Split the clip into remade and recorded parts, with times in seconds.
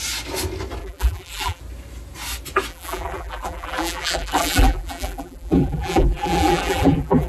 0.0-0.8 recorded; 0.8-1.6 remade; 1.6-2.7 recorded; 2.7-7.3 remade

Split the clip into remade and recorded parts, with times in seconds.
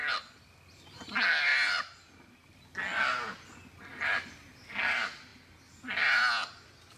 0.0-7.0 recorded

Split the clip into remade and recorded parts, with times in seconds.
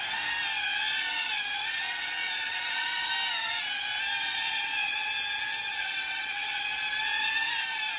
0.0-0.7 recorded; 0.7-3.1 remade; 3.1-4.2 recorded; 4.2-5.1 remade; 5.1-5.8 recorded; 5.8-6.6 remade; 6.6-8.0 recorded